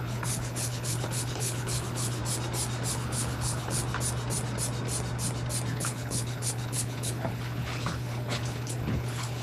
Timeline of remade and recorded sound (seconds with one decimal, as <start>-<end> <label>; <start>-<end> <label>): 0.0-2.2 remade; 2.2-2.9 recorded; 2.9-3.8 remade; 3.8-5.7 recorded; 5.7-9.4 remade